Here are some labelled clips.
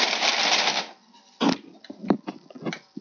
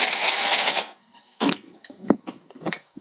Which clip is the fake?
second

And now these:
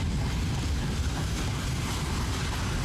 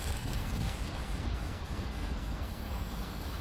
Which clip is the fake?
second